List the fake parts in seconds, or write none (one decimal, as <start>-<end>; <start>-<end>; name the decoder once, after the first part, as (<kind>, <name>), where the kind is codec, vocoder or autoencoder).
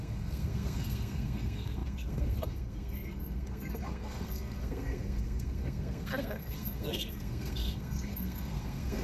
0.0-9.0 (codec, SNAC)